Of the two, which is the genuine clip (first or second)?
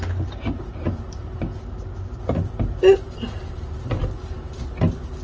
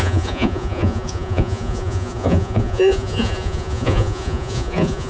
first